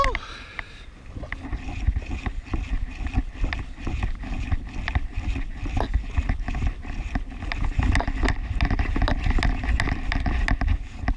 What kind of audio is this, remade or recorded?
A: recorded